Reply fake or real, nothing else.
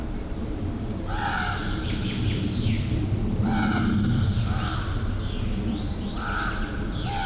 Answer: fake